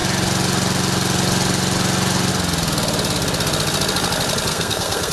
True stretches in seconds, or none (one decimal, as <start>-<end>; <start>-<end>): 0.0-4.5